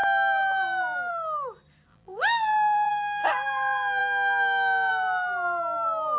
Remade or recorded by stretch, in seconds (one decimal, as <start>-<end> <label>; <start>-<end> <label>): 0.0-1.9 recorded; 1.9-2.9 remade; 2.9-6.2 recorded